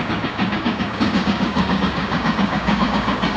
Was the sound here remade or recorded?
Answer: remade